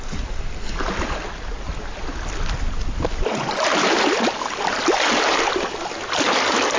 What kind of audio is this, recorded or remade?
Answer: recorded